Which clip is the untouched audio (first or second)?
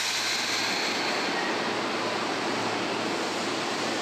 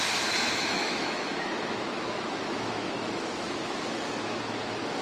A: first